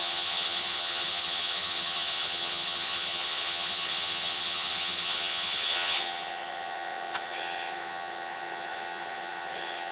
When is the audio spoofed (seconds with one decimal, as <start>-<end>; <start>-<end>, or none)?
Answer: 0.0-9.9